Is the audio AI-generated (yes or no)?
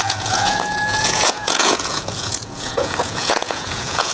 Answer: yes